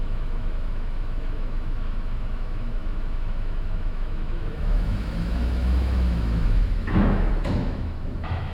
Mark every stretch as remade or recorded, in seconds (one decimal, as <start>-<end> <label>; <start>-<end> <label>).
0.0-8.5 remade